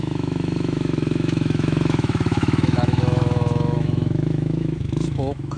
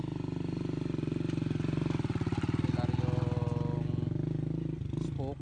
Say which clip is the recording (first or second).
second